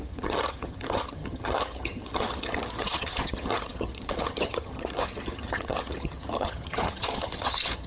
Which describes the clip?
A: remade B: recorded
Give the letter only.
A